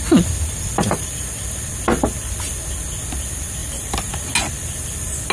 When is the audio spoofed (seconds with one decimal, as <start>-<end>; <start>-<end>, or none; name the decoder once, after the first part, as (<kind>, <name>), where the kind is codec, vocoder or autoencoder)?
3.6-4.1 (vocoder, BigVGAN v2)